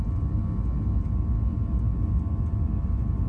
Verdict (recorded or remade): recorded